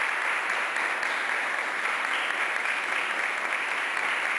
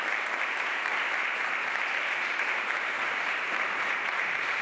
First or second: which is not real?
second